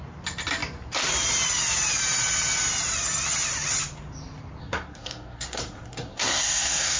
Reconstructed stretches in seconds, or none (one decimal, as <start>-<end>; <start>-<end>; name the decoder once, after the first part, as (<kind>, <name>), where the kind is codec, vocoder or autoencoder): 4.6-7.0 (codec, SNAC)